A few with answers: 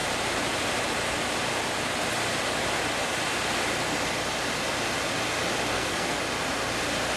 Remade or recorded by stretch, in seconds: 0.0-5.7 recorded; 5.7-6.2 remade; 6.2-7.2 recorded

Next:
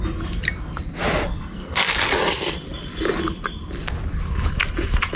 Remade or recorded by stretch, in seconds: 0.0-1.3 recorded; 1.3-1.9 remade; 1.9-5.2 recorded